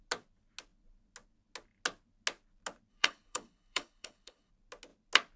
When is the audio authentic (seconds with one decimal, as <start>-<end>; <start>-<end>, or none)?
0.0-2.9; 4.5-5.4